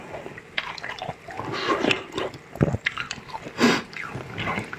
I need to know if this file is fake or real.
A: real